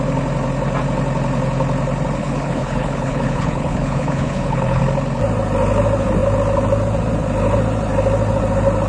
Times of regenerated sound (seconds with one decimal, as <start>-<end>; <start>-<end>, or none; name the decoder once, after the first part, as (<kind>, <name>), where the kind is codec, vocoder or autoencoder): 2.2-4.8 (codec, HILCodec)